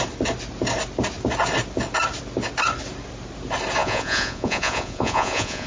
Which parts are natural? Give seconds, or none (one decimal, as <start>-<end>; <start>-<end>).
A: 0.0-3.8

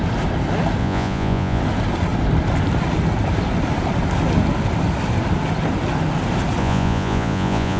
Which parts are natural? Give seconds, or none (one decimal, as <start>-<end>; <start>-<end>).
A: 0.0-0.8; 1.6-6.6

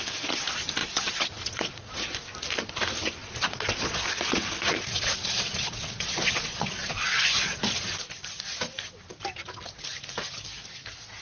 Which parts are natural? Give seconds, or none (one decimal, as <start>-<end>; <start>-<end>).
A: 0.0-0.8; 2.1-3.2; 7.8-11.2

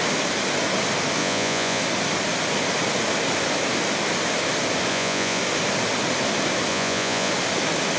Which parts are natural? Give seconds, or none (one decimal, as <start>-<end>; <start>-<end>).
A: 0.0-1.2; 1.8-4.9; 5.4-6.7; 7.3-8.0

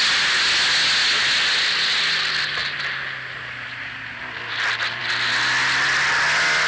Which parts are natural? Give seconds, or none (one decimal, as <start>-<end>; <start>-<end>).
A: 0.0-6.7

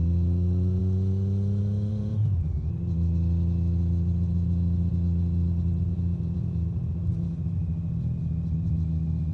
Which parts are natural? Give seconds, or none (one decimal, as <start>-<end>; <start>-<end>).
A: 0.0-1.9; 2.7-5.9; 6.9-9.3

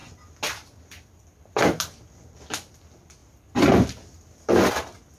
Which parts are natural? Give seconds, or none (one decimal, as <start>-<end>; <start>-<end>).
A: 0.0-5.2

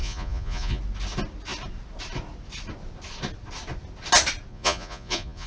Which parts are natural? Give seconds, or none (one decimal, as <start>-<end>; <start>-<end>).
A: 0.8-4.5